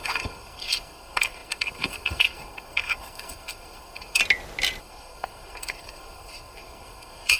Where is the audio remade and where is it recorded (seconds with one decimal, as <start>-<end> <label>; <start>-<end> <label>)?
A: 0.0-4.2 remade; 4.2-4.8 recorded; 4.8-7.4 remade